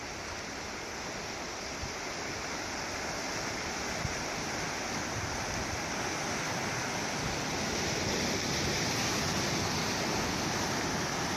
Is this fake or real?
real